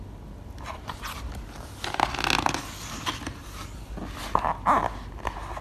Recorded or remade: recorded